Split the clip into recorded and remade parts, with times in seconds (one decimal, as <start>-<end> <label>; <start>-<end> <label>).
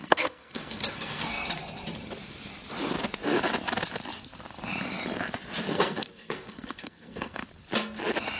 0.0-1.6 remade; 1.6-5.7 recorded; 5.7-7.5 remade; 7.5-8.4 recorded